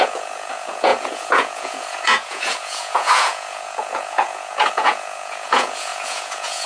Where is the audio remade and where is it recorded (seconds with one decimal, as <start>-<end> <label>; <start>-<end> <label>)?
0.0-6.7 remade